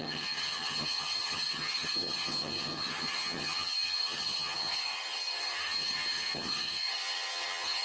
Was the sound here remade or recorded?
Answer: remade